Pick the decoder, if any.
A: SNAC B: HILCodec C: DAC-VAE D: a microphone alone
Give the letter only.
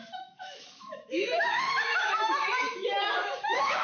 C